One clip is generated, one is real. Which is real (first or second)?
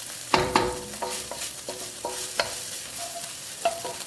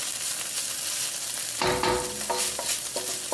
second